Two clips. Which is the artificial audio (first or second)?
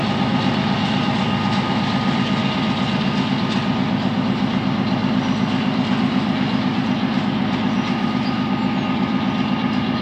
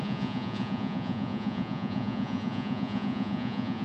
second